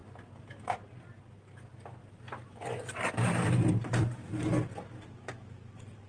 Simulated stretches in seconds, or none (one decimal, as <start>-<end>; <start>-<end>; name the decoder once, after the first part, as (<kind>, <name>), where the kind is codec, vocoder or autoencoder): 3.7-4.5 (vocoder, BigVGAN v2); 5.4-6.1